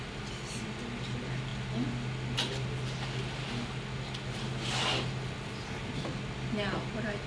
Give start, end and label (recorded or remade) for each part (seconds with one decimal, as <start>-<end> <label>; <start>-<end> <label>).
0.0-7.3 recorded